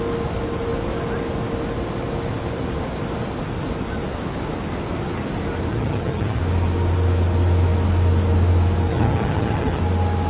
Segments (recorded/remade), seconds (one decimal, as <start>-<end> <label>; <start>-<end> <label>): 0.0-5.7 recorded; 5.7-6.4 remade; 6.4-8.9 recorded; 8.9-9.8 remade; 9.8-10.3 recorded

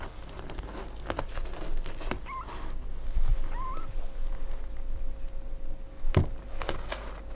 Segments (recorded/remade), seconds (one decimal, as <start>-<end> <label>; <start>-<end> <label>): 0.0-7.4 recorded

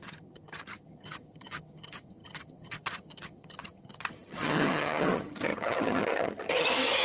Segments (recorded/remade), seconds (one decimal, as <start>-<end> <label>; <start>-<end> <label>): 0.0-7.0 remade

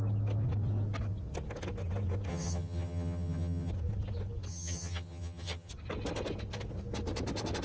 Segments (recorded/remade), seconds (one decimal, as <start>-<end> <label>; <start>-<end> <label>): 0.0-2.3 recorded; 2.3-3.7 remade; 3.7-4.5 recorded; 4.5-5.7 remade; 5.7-7.6 recorded

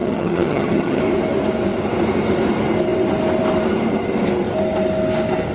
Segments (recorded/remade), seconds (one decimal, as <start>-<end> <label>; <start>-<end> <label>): 0.0-1.0 remade; 1.0-5.5 recorded

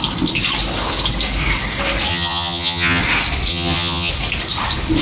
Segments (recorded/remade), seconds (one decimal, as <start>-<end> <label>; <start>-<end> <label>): 0.0-2.1 recorded; 2.1-3.0 remade; 3.0-3.5 recorded; 3.5-4.1 remade; 4.1-5.0 recorded

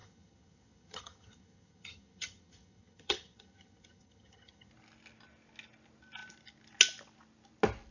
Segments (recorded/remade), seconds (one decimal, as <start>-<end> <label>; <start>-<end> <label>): 0.0-4.7 remade; 4.7-7.9 recorded

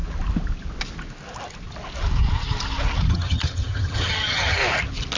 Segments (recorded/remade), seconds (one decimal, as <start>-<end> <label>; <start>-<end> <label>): 0.0-3.1 recorded; 3.1-4.6 remade; 4.6-5.2 recorded